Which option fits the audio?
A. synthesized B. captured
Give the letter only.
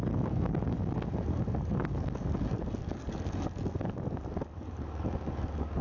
A